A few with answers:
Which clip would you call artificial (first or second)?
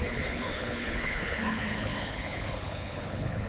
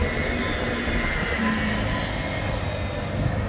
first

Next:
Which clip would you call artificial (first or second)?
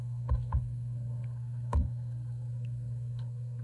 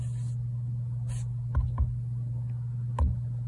first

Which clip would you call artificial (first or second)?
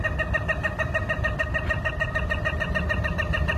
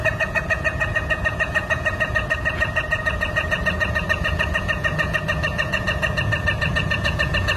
second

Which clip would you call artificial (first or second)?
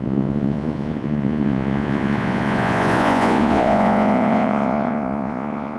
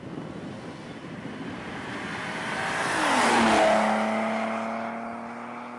first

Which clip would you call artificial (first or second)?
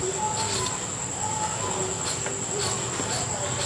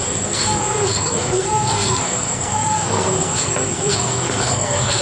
second